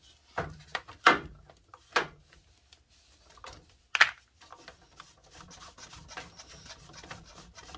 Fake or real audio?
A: real